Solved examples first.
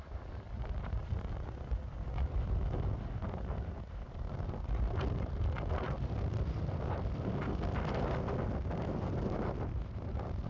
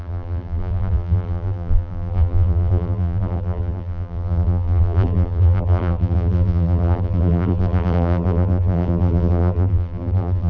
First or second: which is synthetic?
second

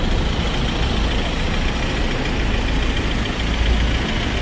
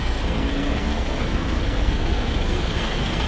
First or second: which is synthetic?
second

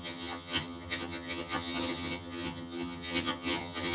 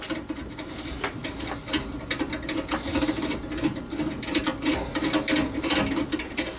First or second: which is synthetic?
first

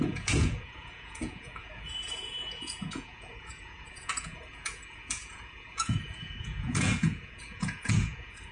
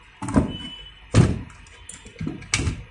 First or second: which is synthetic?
first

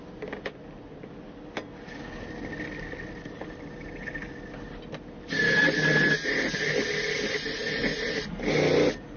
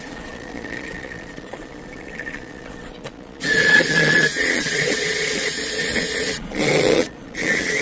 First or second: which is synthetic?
second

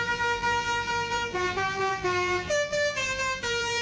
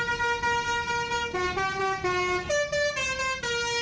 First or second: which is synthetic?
first